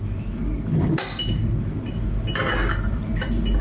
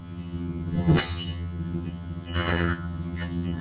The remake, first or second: second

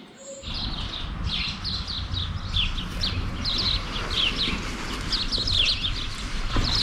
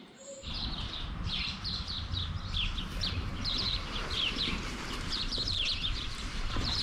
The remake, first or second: second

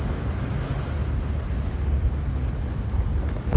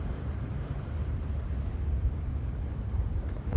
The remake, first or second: second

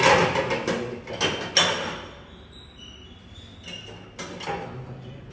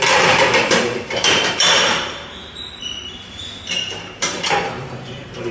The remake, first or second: second